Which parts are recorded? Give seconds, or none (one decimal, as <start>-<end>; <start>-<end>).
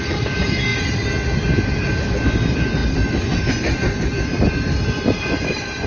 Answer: 0.0-5.9